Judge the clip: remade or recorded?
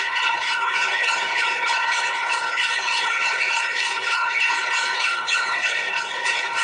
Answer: remade